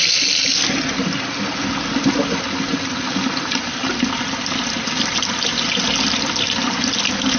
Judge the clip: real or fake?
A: real